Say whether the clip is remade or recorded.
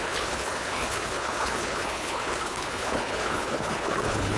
remade